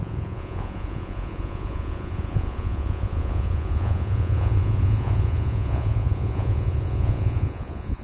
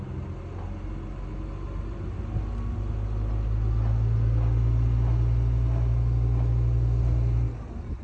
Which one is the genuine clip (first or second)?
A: second